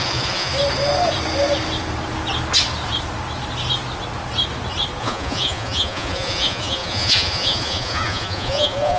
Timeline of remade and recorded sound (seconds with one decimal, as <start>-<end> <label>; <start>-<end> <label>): 0.0-0.5 remade; 0.5-5.0 recorded; 5.0-9.0 remade